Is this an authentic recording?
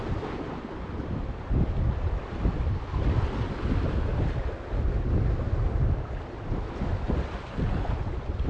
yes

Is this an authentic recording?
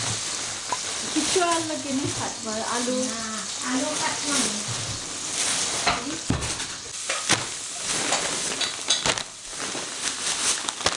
yes